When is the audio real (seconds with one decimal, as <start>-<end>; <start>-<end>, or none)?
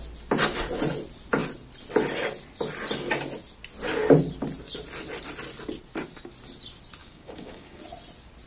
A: 0.0-7.0; 7.8-8.5